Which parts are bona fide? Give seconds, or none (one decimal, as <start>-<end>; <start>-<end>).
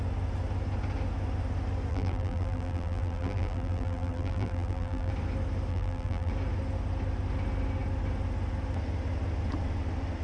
0.0-1.9; 5.1-5.7; 6.3-10.2